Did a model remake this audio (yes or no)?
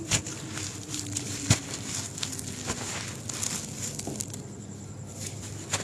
no